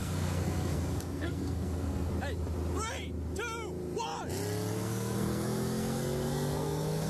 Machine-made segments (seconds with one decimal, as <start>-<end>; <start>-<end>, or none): 0.0-2.1; 4.7-7.1